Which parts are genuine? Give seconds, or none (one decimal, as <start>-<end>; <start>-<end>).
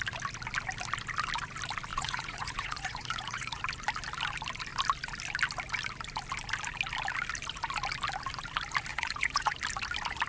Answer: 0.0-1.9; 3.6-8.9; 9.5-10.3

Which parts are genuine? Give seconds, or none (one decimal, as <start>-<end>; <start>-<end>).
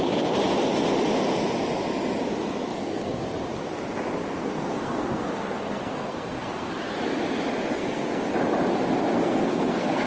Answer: 0.0-2.7; 3.2-4.4; 6.7-7.8; 8.3-9.1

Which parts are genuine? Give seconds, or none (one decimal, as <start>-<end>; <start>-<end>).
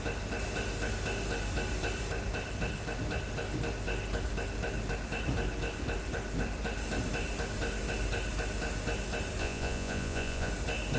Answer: 0.0-9.4; 10.5-11.0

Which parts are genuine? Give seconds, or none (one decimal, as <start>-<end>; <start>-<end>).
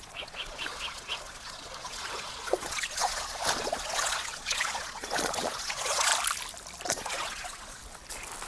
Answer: 6.1-6.9; 7.8-8.5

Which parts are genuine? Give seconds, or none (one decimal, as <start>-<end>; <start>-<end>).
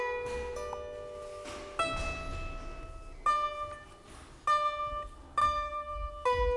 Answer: 0.0-5.4; 6.1-6.6